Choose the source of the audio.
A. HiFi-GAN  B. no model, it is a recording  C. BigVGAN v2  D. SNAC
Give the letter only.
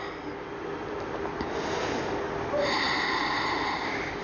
B